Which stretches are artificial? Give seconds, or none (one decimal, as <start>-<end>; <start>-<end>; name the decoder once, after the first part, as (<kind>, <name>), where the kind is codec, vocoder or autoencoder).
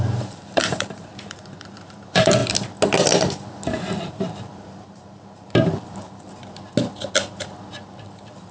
0.0-2.4 (vocoder, BigVGAN v2); 4.0-6.4; 7.8-8.5